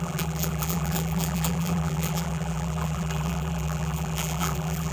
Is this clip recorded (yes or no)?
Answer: no